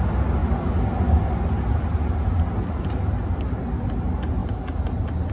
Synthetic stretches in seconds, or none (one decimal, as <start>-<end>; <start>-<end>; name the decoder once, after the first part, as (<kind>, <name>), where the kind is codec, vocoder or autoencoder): none